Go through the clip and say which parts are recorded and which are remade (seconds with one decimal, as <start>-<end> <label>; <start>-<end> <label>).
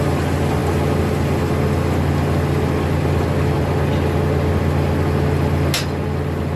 0.0-6.6 recorded